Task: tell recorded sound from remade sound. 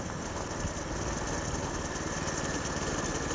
recorded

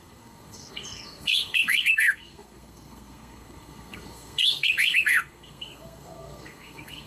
remade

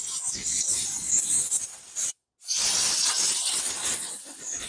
recorded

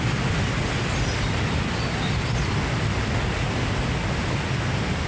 recorded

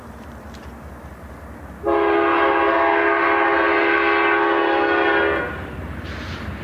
recorded